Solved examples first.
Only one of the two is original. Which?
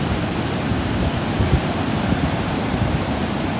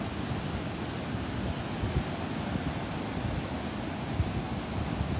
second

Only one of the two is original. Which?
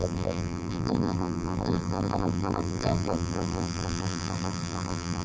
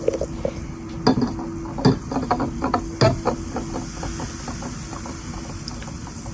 second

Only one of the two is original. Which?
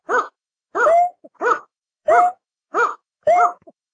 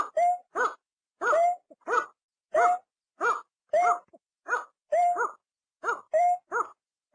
second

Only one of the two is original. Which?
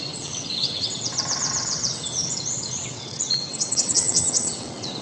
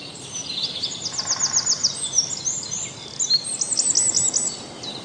second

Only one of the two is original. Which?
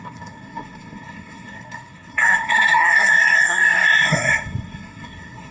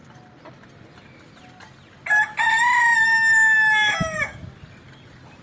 second